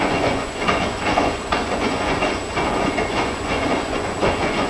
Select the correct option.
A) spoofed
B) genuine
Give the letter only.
A